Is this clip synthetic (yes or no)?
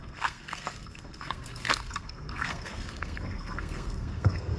yes